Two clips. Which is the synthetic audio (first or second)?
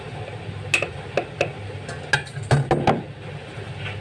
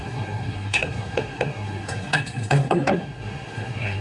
second